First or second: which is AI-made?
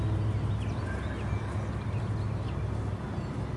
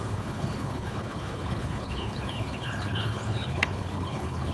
second